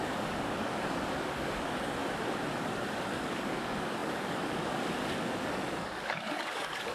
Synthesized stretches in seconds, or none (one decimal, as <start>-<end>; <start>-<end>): 0.0-2.0; 2.6-6.9